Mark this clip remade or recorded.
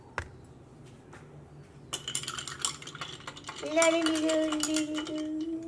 recorded